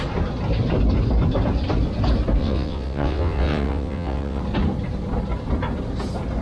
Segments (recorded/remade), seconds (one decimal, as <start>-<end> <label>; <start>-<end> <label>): 0.0-2.4 recorded; 2.4-4.4 remade; 4.4-6.4 recorded

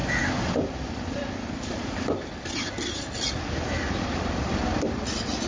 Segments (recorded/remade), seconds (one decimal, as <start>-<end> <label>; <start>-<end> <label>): 0.0-2.5 remade; 2.5-5.5 recorded

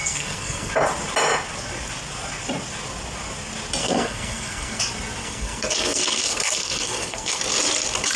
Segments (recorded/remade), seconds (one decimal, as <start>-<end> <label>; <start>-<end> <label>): 0.0-0.7 remade; 0.7-3.8 recorded; 3.8-4.8 remade; 4.8-5.2 recorded; 5.2-7.4 remade; 7.4-8.2 recorded

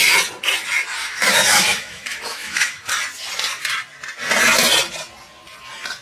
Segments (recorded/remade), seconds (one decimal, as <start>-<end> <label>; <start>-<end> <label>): 0.0-1.0 recorded; 1.0-2.9 remade; 2.9-6.0 recorded